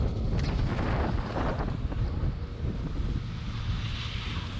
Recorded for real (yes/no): yes